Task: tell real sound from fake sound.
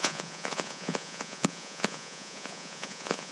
fake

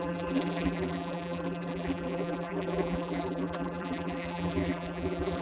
fake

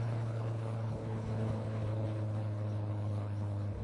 fake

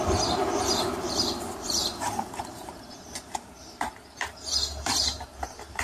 fake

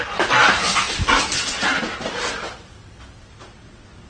real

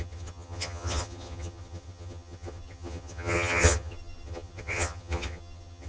fake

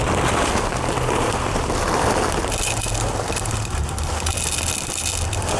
real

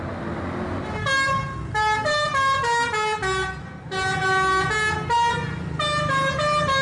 real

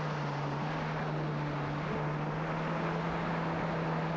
real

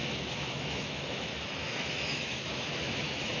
fake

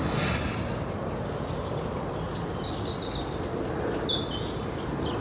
real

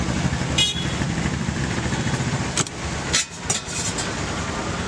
real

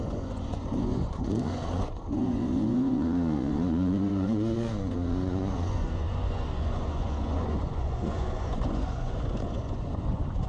fake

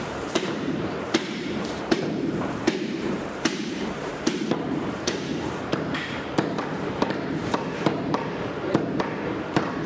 fake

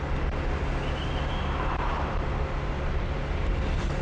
real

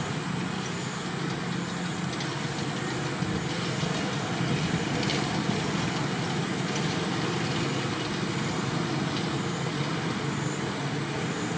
real